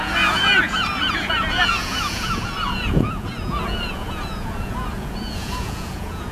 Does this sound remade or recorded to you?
remade